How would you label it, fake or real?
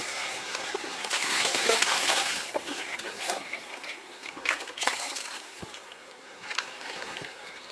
fake